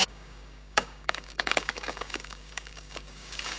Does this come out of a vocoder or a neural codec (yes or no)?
yes